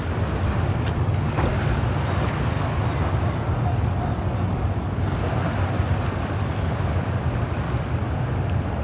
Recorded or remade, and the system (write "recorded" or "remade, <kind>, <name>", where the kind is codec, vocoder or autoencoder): recorded